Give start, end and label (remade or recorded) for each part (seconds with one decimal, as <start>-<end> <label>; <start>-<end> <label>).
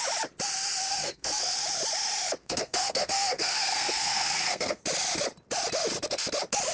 0.0-0.8 recorded; 0.8-1.5 remade; 1.5-2.4 recorded; 2.4-4.8 remade; 4.8-6.7 recorded